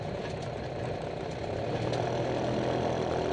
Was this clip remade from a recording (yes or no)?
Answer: no